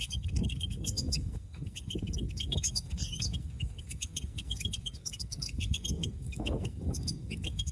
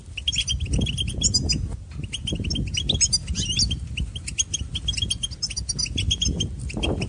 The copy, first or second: first